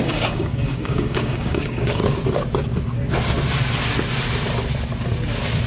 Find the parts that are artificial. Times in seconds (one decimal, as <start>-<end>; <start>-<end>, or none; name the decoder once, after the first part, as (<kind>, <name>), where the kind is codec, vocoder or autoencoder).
0.0-2.0 (codec, DAC)